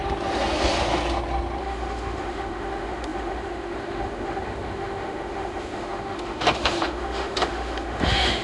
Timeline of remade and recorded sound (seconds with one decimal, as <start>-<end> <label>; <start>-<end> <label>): 0.0-1.6 recorded; 1.6-8.4 remade